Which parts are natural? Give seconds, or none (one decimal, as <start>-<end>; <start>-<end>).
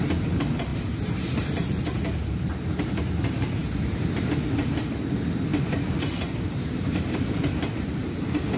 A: 0.0-0.7; 4.3-5.5; 8.1-8.6